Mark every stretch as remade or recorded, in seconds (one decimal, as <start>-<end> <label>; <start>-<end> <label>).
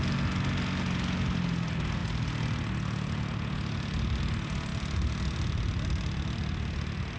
0.0-7.2 recorded